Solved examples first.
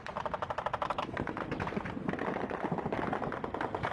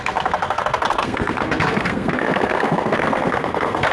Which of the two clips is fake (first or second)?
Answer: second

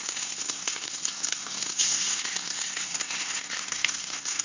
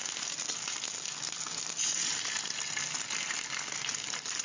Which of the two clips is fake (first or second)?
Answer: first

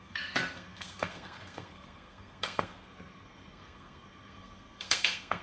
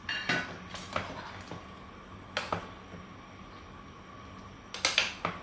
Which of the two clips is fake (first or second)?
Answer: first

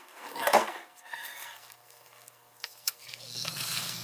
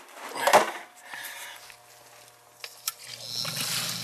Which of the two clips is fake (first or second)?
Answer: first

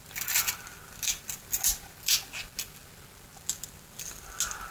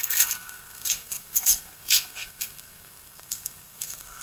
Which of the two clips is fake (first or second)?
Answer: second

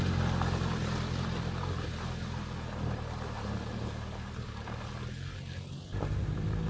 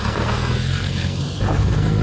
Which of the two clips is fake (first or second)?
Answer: second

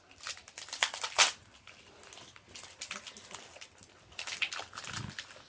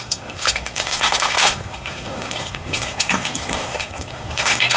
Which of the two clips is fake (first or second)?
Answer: second